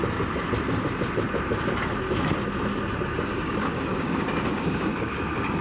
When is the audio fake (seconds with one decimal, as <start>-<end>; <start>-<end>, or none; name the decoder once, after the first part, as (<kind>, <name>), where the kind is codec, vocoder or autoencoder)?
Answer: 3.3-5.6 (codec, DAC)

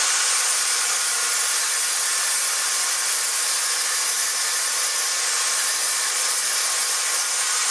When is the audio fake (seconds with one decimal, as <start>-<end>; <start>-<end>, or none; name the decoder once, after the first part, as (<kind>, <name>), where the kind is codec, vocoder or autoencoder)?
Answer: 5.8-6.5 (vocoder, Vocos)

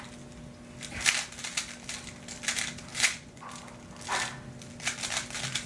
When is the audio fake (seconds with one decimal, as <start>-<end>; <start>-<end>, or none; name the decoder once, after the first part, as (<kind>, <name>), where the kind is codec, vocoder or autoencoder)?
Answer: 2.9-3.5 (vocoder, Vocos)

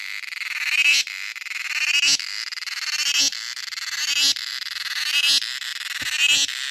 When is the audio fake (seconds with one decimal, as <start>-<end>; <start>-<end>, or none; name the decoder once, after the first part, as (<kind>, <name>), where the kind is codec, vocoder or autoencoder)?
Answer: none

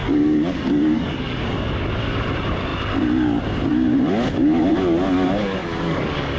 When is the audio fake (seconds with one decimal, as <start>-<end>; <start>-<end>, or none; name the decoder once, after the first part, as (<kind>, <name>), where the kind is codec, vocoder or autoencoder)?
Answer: 0.0-1.4 (codec, DAC); 5.6-6.4

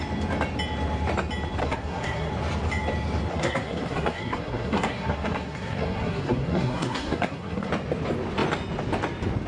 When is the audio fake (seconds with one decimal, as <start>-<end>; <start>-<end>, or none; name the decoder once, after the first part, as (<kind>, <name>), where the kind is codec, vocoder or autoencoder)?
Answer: 1.6-2.3 (codec, SNAC); 3.3-7.7

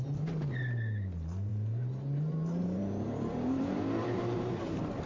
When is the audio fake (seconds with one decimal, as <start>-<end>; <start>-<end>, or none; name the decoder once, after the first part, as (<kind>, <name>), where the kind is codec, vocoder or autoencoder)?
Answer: 1.5-4.6 (vocoder, BigVGAN v2)